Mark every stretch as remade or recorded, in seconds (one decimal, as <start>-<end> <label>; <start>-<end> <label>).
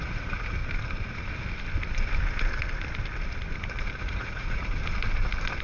0.0-0.6 remade; 0.6-4.0 recorded; 4.0-4.8 remade; 4.8-5.6 recorded